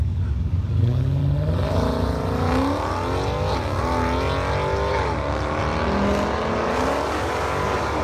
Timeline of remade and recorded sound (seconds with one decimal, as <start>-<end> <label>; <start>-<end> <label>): 0.0-1.2 remade; 1.2-4.9 recorded; 4.9-5.6 remade; 5.6-6.5 recorded; 6.5-8.0 remade